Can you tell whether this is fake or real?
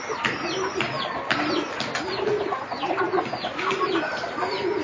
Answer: real